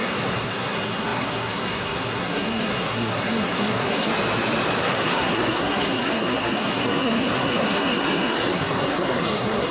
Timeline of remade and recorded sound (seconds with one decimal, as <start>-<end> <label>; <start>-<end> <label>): 0.0-4.1 remade; 4.1-4.8 recorded; 4.8-9.7 remade

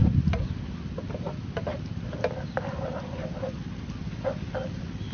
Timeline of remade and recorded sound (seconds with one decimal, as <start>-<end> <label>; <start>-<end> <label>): 0.0-5.1 recorded

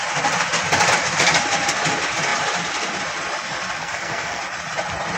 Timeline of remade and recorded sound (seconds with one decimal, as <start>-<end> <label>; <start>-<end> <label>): 0.0-3.8 recorded; 3.8-4.4 remade; 4.4-5.2 recorded

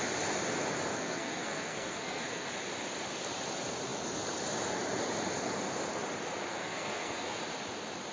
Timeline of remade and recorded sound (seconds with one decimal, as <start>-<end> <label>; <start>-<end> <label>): 0.0-0.9 recorded; 0.9-2.5 remade; 2.5-6.5 recorded; 6.5-7.4 remade; 7.4-8.1 recorded

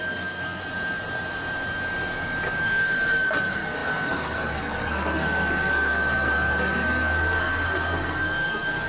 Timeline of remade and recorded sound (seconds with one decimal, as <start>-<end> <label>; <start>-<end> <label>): 0.0-0.6 remade; 0.6-2.6 recorded; 2.6-8.9 remade

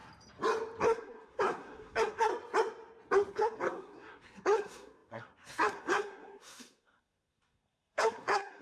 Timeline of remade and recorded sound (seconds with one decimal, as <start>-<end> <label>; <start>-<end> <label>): 0.0-0.8 recorded; 0.8-2.3 remade; 2.3-3.3 recorded; 3.3-8.6 remade